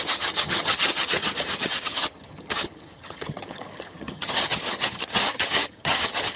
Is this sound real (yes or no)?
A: no